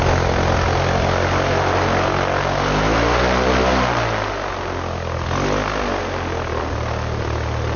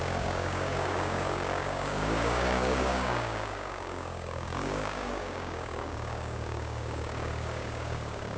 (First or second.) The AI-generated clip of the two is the second